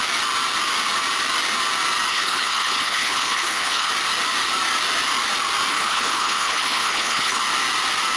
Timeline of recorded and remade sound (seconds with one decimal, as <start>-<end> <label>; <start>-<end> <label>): 0.0-2.1 recorded; 2.1-3.9 remade; 3.9-5.7 recorded; 5.7-7.4 remade; 7.4-8.2 recorded